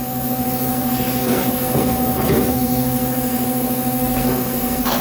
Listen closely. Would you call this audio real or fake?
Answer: fake